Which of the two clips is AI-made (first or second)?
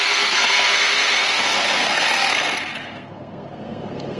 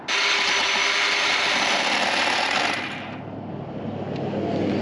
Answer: first